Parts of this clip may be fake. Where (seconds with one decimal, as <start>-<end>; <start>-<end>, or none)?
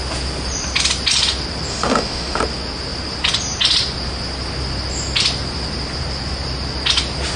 1.7-2.4